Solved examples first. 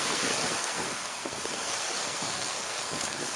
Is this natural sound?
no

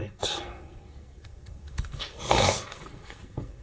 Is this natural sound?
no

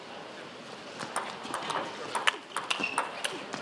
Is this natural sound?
yes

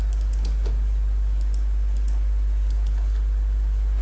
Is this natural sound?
yes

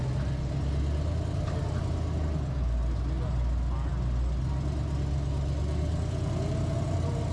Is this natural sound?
yes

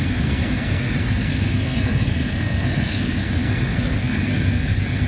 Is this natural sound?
no